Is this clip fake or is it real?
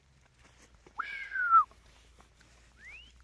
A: real